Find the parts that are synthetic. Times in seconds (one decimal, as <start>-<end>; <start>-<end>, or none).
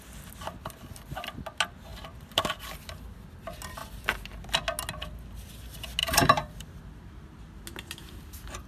6.0-6.8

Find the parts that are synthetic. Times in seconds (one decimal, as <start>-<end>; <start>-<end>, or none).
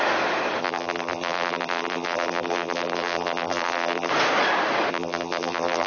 0.6-4.1; 4.9-5.9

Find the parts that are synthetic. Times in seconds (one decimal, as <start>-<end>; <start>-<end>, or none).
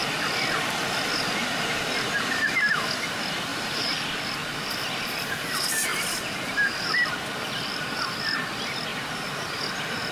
3.5-4.0; 5.9-7.1; 8.9-9.6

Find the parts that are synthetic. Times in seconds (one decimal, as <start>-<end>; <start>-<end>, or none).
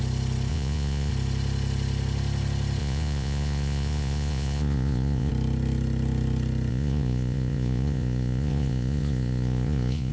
0.5-1.1; 2.8-5.3; 6.7-10.1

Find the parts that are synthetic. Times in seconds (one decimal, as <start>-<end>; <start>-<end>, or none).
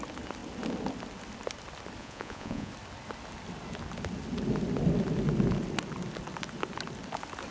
2.0-2.7